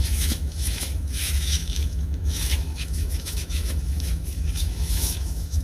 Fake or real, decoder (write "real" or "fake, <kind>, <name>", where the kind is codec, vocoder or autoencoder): fake, autoencoder, DAC-VAE